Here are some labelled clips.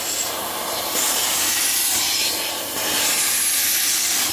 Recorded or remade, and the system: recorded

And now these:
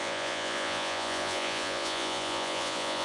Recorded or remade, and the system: remade, vocoder, Vocos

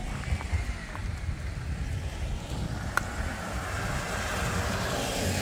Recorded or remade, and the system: recorded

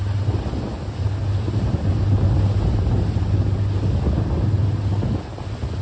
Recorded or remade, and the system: recorded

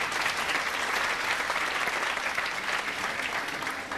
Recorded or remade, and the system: recorded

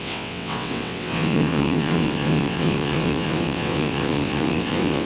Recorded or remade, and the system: remade, vocoder, WaveNeXt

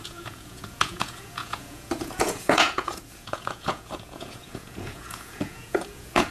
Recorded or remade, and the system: remade, vocoder, Vocos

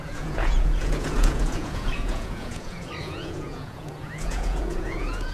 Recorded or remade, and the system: remade, vocoder, Vocos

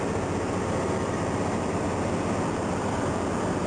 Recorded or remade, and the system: recorded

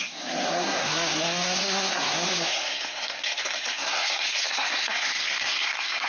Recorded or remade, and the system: remade, codec, SNAC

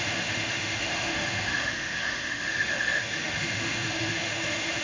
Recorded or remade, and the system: remade, autoencoder, DAC-VAE